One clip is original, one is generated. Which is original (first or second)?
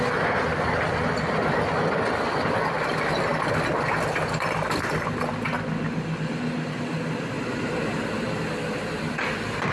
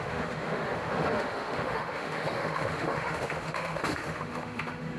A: first